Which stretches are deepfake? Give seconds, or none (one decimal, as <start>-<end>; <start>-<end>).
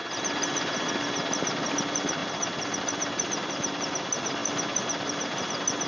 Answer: none